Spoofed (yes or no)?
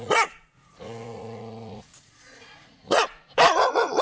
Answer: yes